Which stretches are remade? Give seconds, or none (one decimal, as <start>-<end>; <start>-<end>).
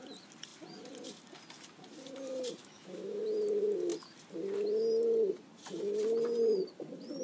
2.6-3.2